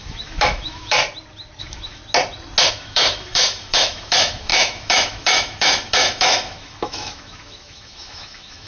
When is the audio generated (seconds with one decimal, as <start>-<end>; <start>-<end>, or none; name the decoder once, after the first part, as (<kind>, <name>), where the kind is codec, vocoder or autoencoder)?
0.0-1.0 (autoencoder, DAC-VAE); 1.6-2.0; 2.7-8.7